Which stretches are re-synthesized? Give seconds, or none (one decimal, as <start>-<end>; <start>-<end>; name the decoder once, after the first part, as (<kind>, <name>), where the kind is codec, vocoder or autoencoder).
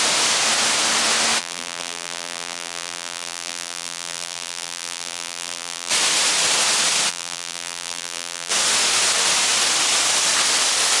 1.4-5.9 (vocoder, BigVGAN v2); 7.1-8.5